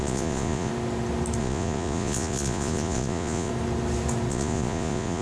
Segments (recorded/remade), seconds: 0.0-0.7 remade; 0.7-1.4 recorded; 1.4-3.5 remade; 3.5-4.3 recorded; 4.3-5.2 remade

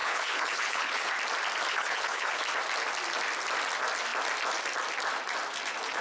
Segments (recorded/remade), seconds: 0.0-1.1 remade; 1.1-1.7 recorded; 1.7-2.4 remade; 2.4-6.0 recorded

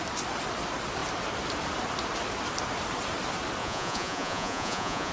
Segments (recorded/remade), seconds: 0.0-3.6 recorded; 3.6-5.1 remade

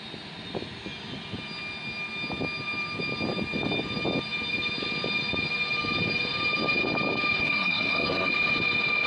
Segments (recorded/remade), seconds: 0.0-7.4 recorded; 7.4-8.3 remade; 8.3-9.1 recorded

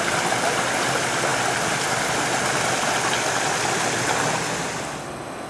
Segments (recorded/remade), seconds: 0.0-5.5 recorded

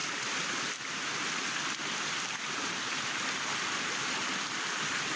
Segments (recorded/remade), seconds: 0.0-5.2 recorded

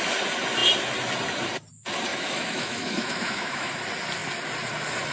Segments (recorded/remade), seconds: 0.0-2.1 recorded; 2.1-3.7 remade; 3.7-5.1 recorded

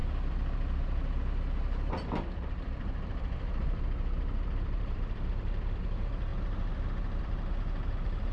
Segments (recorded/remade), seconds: 0.0-2.3 recorded; 2.3-6.3 remade; 6.3-7.2 recorded; 7.2-8.3 remade